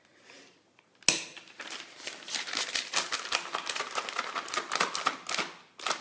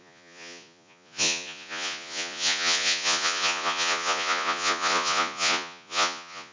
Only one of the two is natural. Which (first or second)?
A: first